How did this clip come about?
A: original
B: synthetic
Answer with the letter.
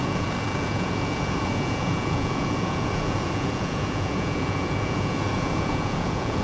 B